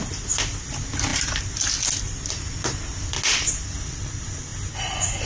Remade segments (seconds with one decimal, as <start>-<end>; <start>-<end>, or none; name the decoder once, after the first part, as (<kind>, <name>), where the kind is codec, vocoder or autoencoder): none